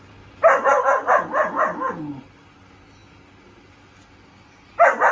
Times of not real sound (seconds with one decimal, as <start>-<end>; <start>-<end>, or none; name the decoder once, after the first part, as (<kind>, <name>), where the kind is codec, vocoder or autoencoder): none

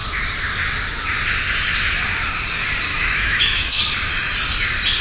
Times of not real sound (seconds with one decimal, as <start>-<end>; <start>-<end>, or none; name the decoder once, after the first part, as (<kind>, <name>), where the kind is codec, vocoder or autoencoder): 2.9-3.8 (autoencoder, DAC-VAE)

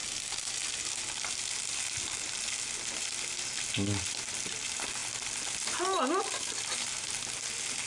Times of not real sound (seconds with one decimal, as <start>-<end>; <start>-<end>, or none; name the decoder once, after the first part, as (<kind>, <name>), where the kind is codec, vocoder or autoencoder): none

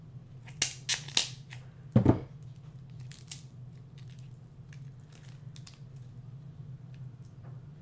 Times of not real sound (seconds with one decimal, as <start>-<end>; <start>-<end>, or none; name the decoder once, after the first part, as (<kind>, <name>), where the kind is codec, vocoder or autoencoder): none